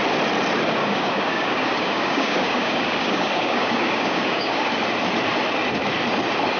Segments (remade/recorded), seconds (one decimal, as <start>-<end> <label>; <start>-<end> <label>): 0.0-0.8 recorded; 0.8-4.7 remade; 4.7-6.6 recorded